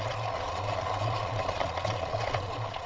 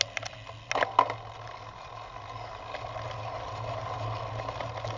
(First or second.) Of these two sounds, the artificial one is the first